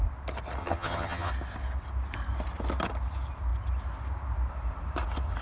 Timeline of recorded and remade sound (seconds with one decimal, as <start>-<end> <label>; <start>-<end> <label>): 0.0-0.6 recorded; 0.6-1.3 remade; 1.3-5.4 recorded